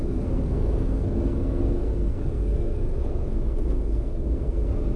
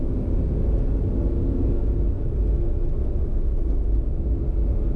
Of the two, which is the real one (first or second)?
second